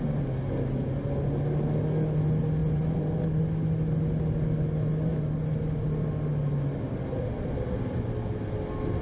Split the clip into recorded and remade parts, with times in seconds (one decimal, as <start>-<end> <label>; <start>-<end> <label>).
0.0-2.6 recorded; 2.6-3.4 remade; 3.4-9.0 recorded